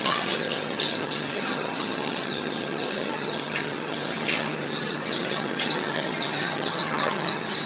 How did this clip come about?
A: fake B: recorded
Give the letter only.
A